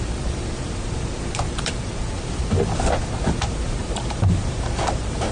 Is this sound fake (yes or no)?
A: yes